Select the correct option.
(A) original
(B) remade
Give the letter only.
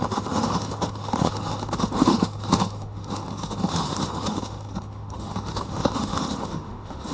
B